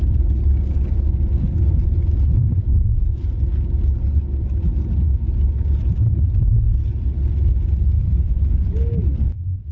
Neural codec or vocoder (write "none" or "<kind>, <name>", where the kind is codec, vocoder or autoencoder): none